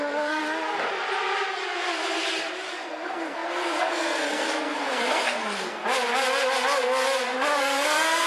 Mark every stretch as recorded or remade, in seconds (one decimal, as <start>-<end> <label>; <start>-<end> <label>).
0.0-0.4 remade; 0.4-2.7 recorded; 2.7-5.8 remade; 5.8-7.6 recorded; 7.6-8.3 remade